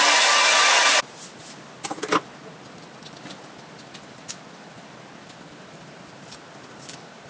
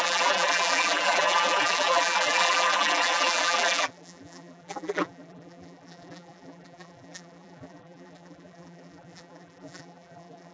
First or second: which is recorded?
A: first